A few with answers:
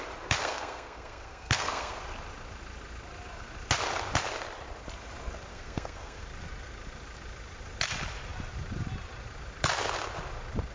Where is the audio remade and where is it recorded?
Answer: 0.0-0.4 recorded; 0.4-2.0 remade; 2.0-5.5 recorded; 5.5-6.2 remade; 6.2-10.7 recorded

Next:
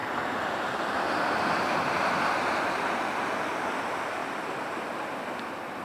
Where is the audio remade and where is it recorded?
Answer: 0.0-4.2 recorded; 4.2-4.8 remade; 4.8-5.8 recorded

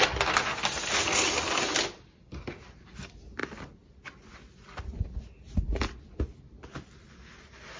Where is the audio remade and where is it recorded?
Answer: 0.0-7.8 recorded

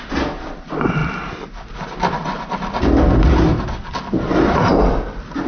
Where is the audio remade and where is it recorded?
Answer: 0.0-5.5 recorded